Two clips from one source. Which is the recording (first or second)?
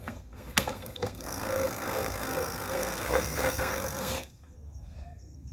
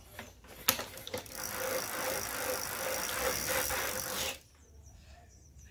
second